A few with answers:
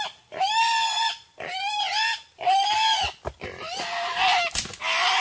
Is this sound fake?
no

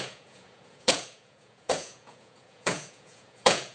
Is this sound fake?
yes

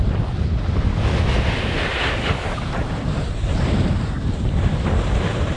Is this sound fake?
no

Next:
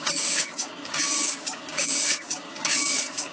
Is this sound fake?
yes